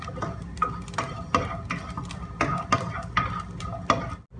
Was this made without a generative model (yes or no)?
yes